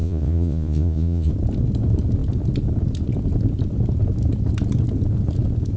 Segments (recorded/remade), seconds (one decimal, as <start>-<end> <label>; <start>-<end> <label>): 0.0-1.3 remade; 1.3-5.8 recorded